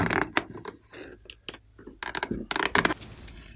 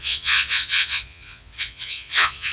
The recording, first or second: first